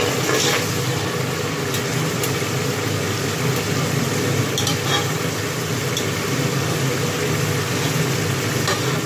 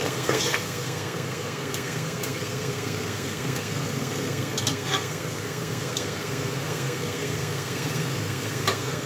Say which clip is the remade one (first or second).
second